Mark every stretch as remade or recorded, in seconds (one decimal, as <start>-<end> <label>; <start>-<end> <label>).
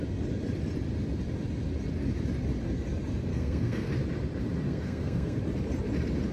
0.0-3.3 recorded; 3.3-3.9 remade; 3.9-4.7 recorded; 4.7-5.4 remade; 5.4-6.3 recorded